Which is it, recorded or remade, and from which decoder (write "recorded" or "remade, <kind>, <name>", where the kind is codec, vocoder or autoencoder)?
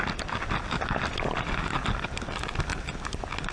recorded